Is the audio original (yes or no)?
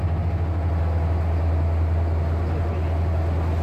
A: yes